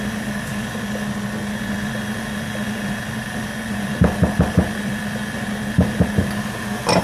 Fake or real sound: real